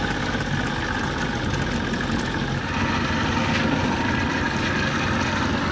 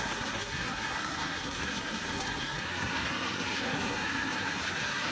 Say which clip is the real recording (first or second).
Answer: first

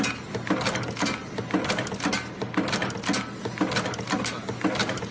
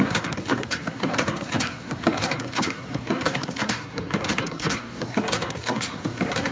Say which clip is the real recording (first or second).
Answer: first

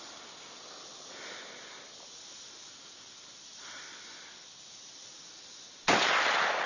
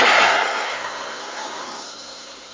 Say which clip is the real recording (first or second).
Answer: first